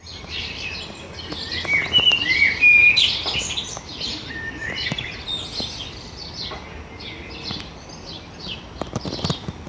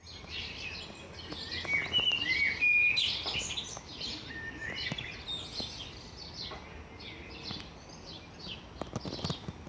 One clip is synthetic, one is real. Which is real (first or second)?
second